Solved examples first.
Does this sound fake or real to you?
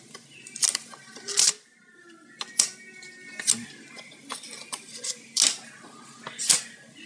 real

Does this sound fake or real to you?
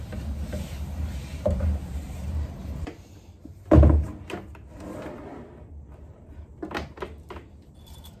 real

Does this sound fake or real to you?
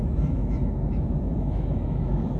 fake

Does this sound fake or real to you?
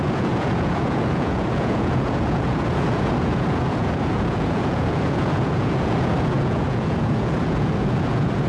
fake